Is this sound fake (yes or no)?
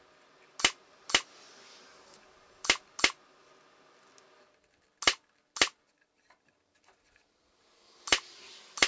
no